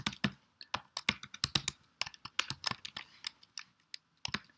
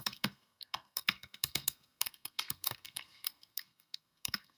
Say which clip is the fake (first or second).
second